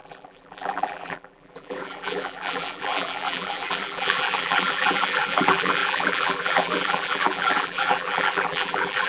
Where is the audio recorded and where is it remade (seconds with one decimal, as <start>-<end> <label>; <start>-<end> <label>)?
0.0-9.1 remade

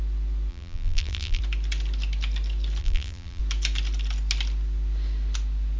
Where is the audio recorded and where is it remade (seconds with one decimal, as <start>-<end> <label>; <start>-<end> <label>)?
0.0-0.5 recorded; 0.5-1.4 remade; 1.4-2.8 recorded; 2.8-3.4 remade; 3.4-5.8 recorded

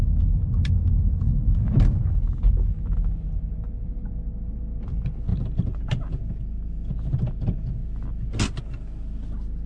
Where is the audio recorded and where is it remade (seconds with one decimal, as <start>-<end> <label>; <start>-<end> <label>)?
0.0-5.3 recorded; 5.3-6.2 remade; 6.2-9.7 recorded

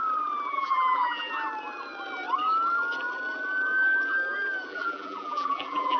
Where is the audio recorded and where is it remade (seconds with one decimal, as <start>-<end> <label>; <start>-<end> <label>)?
0.0-0.5 recorded; 0.5-1.3 remade; 1.3-4.7 recorded; 4.7-6.0 remade

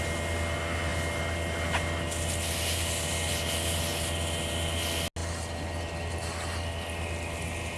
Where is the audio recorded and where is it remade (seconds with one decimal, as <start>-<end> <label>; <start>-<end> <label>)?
0.0-7.8 recorded

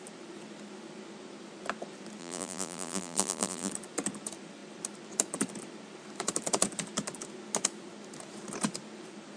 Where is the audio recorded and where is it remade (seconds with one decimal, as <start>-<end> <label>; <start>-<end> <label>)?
0.0-2.2 recorded; 2.2-3.7 remade; 3.7-9.4 recorded